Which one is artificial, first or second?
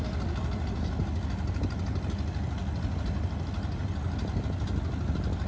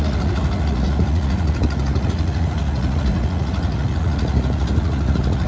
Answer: second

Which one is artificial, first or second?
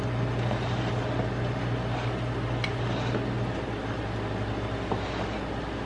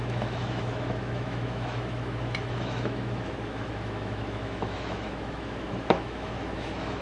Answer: second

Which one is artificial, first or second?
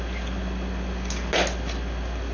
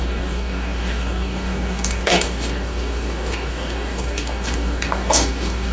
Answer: second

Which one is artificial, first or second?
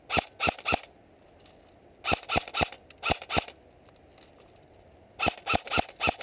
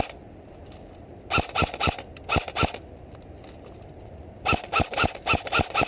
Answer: second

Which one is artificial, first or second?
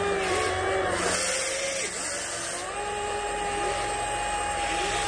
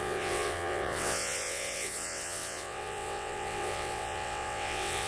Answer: second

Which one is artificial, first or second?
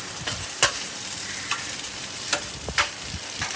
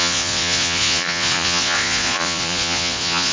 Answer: second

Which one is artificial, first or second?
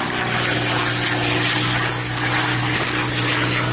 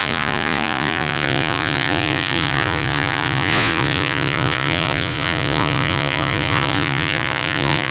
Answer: second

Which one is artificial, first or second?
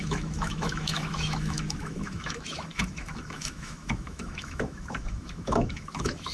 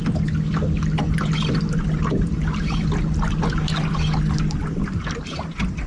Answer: first